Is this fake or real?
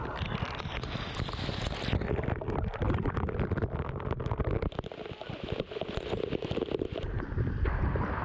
real